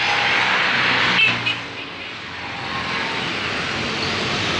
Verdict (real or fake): real